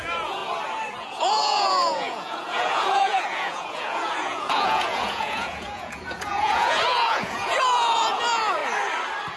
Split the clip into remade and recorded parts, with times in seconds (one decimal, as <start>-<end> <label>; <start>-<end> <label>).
0.0-0.4 remade; 0.4-1.0 recorded; 1.0-8.6 remade; 8.6-9.4 recorded